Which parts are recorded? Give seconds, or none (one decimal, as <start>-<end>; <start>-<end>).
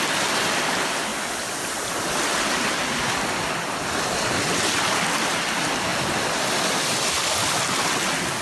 0.0-1.1; 1.7-8.4